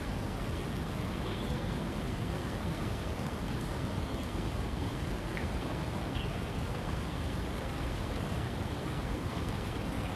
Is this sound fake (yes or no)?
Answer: yes